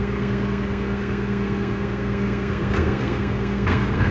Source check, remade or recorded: remade